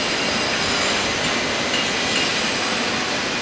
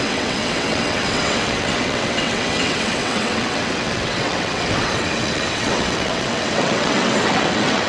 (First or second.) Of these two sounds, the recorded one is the first